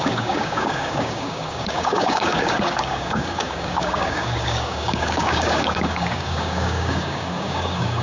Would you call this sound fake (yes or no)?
yes